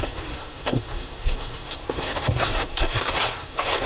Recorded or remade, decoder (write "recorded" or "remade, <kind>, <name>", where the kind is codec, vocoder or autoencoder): remade, codec, SNAC